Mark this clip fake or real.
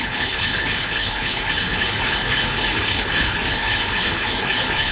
fake